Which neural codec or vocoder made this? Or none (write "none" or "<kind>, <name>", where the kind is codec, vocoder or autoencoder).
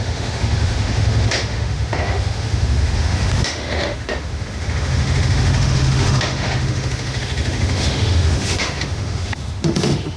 autoencoder, DAC-VAE